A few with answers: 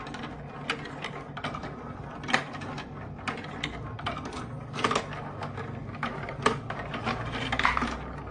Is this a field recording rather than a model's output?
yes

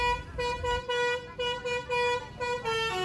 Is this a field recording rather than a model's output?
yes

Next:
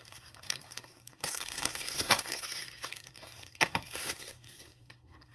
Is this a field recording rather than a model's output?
no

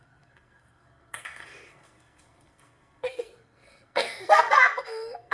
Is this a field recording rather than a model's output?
no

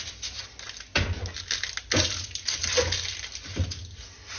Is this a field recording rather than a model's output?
yes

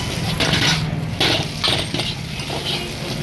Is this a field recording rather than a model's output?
yes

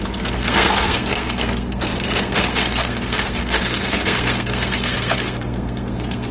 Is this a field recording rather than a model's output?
no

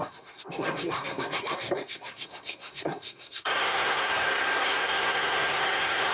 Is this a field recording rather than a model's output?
no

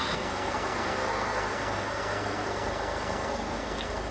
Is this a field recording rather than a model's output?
no